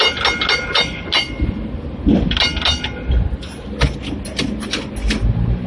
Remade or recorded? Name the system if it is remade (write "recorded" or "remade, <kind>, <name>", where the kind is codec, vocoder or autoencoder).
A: recorded